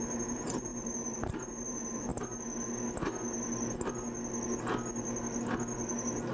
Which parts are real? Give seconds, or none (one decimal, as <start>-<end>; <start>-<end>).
2.1-6.3